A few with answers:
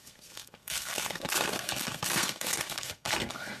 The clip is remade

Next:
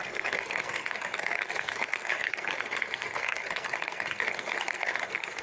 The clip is remade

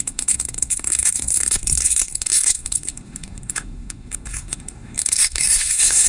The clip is remade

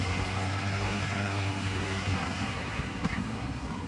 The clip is remade